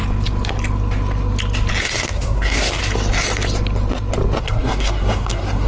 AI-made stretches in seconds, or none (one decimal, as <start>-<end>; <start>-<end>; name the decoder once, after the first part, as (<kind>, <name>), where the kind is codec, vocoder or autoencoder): 1.8-2.8 (codec, SNAC); 4.4-5.7